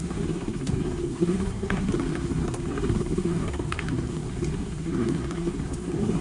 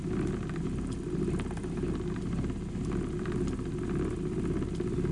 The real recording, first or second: second